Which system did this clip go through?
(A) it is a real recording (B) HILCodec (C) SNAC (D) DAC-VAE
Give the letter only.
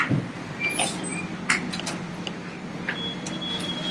A